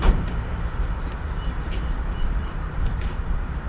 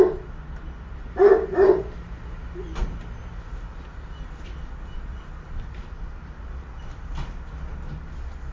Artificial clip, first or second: first